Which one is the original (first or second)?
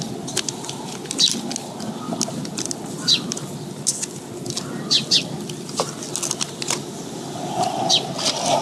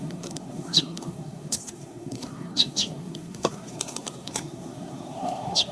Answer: first